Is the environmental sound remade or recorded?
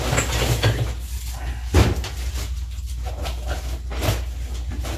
recorded